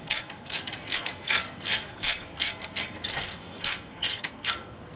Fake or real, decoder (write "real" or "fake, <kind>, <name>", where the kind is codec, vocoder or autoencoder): fake, codec, SNAC